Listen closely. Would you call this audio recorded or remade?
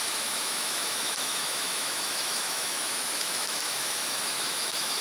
remade